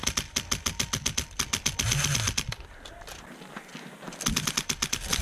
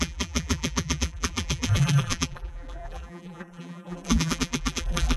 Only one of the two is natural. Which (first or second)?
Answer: first